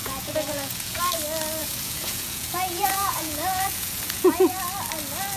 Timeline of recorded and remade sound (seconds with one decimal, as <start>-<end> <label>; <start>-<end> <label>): 0.0-1.0 remade; 1.0-1.6 recorded; 1.6-4.6 remade; 4.6-5.4 recorded